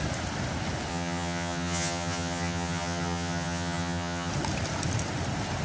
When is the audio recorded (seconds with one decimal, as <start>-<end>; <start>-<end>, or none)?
0.0-0.9; 4.3-5.6